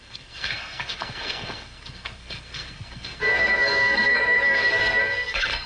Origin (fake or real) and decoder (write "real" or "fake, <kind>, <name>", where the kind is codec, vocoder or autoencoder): fake, codec, SNAC